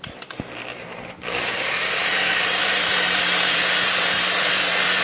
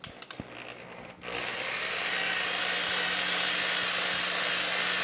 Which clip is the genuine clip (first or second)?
second